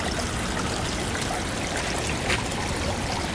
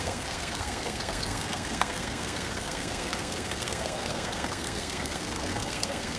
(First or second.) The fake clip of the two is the second